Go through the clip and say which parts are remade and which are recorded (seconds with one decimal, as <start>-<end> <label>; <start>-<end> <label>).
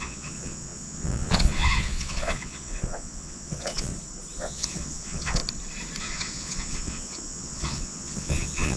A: 0.0-3.9 remade; 3.9-4.4 recorded; 4.4-5.4 remade; 5.4-6.0 recorded; 6.0-8.8 remade